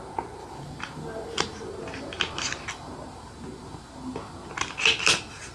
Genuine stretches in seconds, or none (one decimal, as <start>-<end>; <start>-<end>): 0.0-5.5